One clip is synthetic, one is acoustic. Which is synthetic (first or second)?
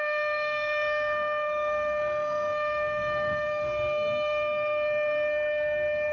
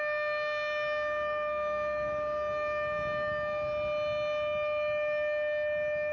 first